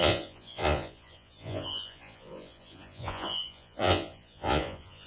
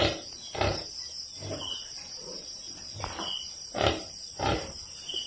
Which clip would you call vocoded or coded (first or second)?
first